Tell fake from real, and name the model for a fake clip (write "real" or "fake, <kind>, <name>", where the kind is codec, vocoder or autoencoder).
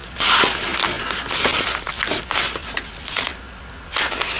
real